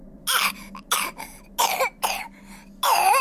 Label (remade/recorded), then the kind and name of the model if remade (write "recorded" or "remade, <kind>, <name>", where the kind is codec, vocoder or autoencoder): recorded